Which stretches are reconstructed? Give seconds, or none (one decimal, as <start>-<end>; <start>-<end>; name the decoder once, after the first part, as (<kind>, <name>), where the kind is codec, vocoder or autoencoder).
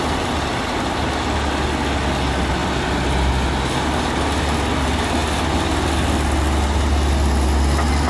none